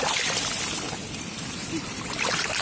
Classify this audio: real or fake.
fake